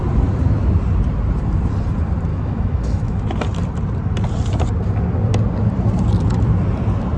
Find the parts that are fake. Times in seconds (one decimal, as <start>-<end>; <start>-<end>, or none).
2.3-3.2

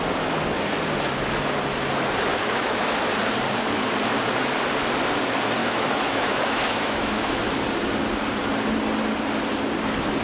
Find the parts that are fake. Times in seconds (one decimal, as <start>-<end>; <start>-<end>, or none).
2.3-2.9; 5.6-7.5